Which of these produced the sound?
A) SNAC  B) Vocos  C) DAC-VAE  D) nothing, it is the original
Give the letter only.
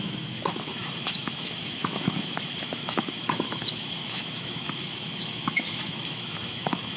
C